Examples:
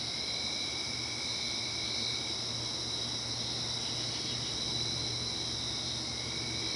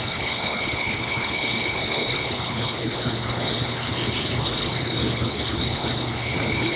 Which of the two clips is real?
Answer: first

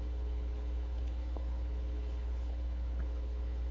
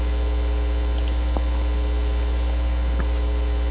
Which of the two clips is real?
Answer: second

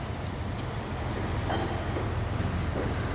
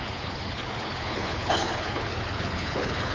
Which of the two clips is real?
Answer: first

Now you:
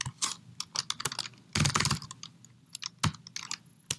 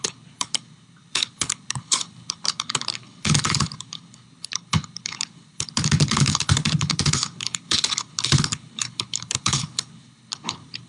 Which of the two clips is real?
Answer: first